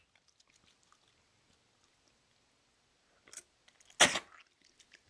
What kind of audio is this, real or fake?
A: real